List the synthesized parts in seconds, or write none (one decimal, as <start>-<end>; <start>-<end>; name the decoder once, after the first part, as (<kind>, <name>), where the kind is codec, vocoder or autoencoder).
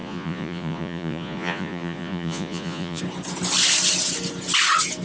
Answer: 0.0-3.0 (vocoder, Vocos)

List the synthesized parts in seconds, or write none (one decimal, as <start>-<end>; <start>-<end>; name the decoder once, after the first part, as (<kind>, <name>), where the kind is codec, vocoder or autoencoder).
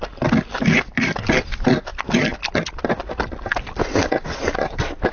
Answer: none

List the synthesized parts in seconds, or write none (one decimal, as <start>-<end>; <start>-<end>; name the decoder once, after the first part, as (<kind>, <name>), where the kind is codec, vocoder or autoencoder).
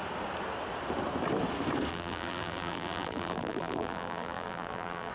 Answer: 1.9-5.1 (vocoder, BigVGAN v2)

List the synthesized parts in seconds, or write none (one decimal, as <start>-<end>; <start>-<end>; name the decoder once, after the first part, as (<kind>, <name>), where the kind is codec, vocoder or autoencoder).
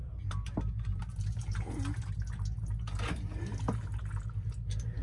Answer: none